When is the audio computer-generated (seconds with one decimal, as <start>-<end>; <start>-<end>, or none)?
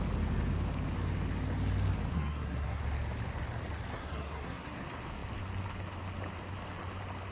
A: 2.1-2.8; 3.9-4.8